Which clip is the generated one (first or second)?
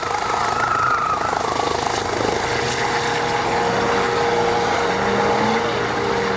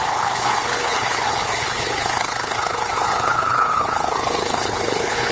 second